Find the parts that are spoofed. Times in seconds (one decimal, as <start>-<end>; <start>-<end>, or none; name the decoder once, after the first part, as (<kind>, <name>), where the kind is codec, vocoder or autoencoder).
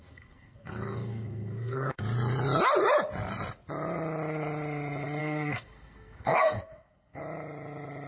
0.0-2.0 (codec, SNAC); 5.2-7.2